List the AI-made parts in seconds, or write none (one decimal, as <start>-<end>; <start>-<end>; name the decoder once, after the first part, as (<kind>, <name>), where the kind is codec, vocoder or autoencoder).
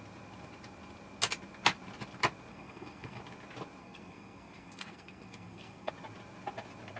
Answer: 2.5-3.2 (codec, SNAC); 3.8-5.9